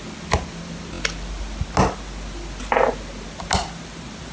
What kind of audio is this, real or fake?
real